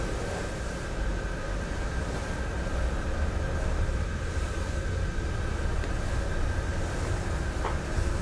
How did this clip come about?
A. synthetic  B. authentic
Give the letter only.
B